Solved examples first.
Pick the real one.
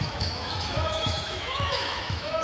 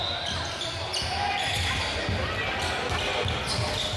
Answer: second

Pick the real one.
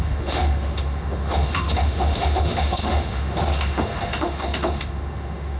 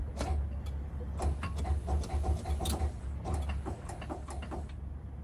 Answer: second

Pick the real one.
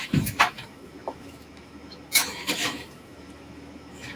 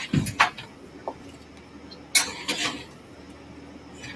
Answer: second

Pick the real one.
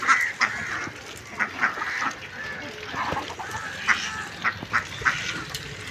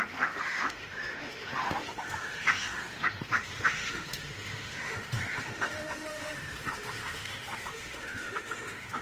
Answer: first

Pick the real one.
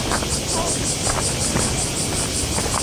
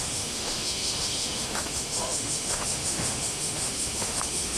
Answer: first